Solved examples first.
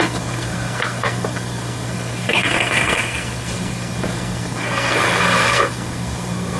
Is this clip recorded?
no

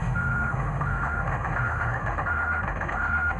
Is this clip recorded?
no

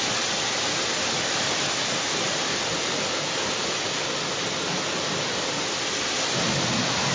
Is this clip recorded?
yes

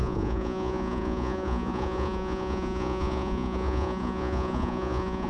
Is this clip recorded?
no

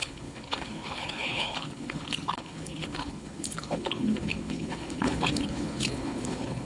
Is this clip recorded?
no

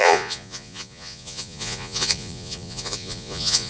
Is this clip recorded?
no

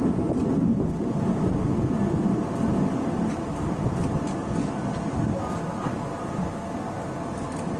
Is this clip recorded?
yes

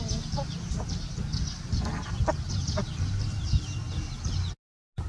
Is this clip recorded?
yes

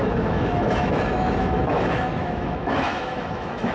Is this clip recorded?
no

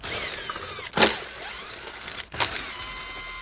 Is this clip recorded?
yes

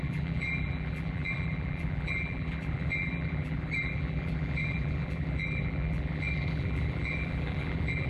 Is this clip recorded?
no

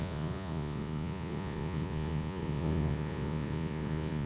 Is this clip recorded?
no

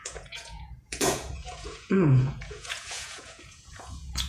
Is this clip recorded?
no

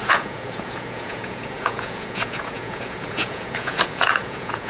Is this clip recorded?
no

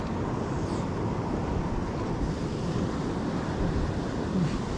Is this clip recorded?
yes